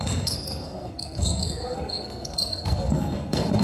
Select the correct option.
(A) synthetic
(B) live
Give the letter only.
A